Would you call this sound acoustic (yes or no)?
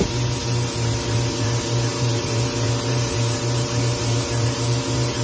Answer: no